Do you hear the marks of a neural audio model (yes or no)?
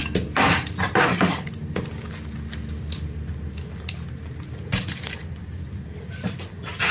no